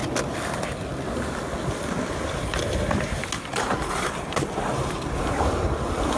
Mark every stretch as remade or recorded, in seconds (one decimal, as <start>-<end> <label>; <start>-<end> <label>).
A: 0.0-3.5 recorded; 3.5-4.3 remade; 4.3-6.2 recorded